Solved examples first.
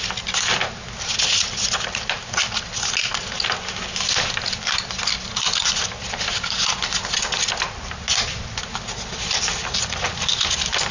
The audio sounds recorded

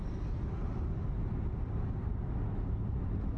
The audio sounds recorded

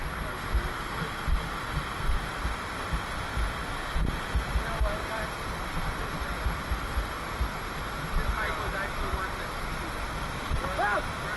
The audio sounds recorded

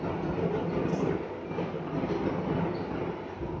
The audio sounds recorded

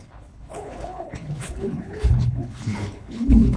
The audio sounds remade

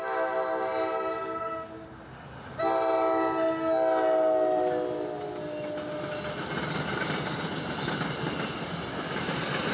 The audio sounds recorded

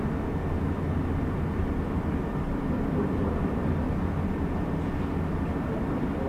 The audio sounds remade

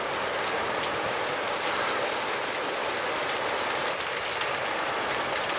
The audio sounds recorded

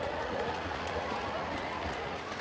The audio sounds remade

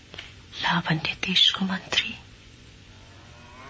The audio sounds remade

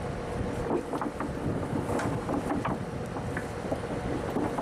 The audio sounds recorded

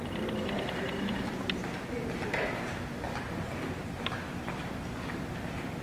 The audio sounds recorded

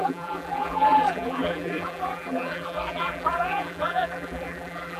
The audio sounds remade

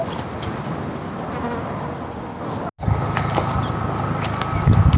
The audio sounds recorded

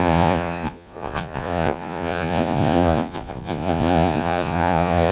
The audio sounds remade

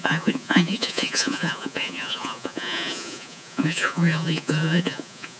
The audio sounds remade